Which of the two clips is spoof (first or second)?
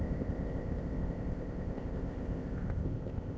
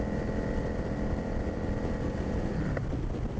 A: first